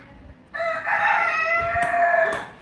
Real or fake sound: real